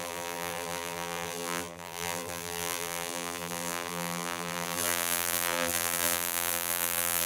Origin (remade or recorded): remade